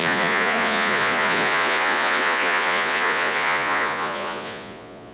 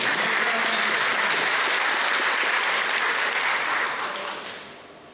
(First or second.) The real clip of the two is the second